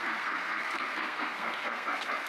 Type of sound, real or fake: fake